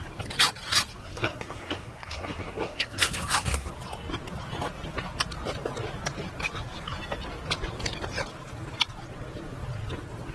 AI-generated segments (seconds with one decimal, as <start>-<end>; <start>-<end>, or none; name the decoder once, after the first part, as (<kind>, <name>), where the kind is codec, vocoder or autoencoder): 1.0-3.7 (codec, SNAC)